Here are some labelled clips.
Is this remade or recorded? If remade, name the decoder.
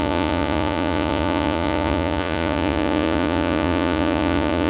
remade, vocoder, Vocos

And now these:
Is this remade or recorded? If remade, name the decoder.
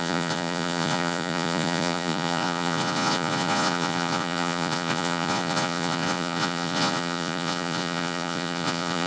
remade, vocoder, Vocos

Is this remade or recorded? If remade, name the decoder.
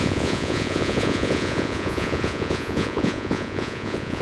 remade, vocoder, Vocos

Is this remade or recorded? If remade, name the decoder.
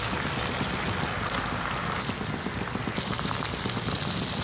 recorded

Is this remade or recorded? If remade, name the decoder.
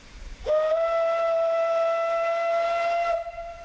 recorded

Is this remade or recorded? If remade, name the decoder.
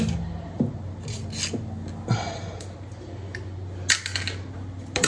recorded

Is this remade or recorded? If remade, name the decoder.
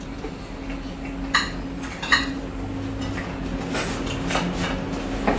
recorded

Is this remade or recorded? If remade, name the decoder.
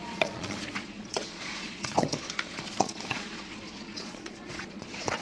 remade, vocoder, Vocos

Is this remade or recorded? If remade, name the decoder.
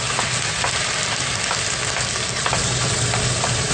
recorded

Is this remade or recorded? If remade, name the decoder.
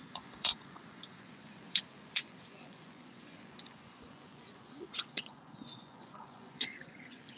remade, vocoder, Vocos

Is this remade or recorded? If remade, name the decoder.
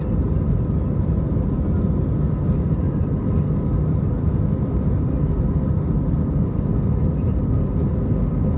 recorded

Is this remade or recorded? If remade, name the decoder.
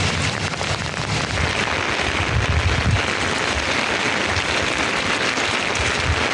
recorded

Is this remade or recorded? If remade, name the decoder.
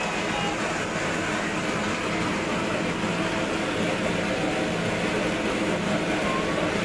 recorded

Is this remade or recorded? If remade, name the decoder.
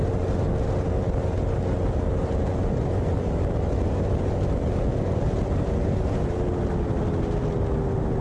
recorded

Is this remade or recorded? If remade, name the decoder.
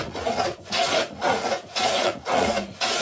remade, vocoder, Vocos